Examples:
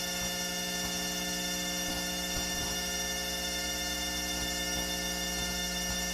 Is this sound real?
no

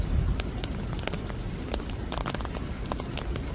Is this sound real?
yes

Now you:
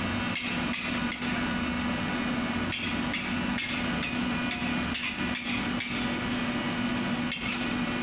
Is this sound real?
yes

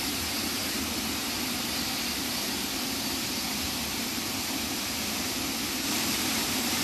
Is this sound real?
no